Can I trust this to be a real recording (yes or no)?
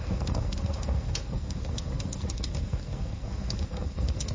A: no